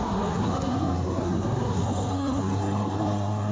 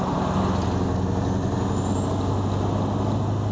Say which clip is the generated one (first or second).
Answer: first